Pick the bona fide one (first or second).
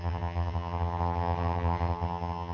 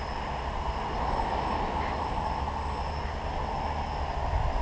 second